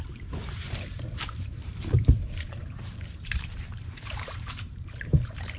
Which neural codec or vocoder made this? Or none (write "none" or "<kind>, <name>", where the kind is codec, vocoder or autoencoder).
vocoder, BigVGAN v2